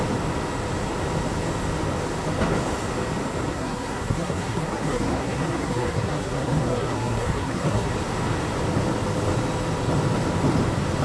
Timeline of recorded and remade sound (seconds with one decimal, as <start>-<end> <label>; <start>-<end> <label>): 0.0-3.5 recorded; 3.5-7.9 remade; 7.9-11.0 recorded